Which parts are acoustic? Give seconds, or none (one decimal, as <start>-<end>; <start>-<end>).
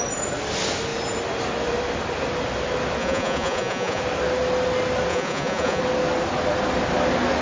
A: 0.0-3.0; 4.0-5.1; 5.8-7.4